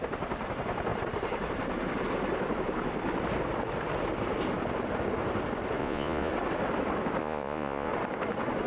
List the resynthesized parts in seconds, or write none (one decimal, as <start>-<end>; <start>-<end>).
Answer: 5.8-6.3; 7.2-7.9